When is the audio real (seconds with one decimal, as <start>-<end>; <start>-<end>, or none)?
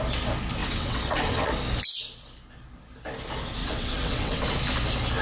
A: 0.0-0.6; 1.5-3.6; 4.4-5.2